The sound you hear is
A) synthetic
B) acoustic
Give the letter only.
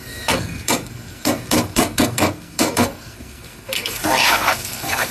A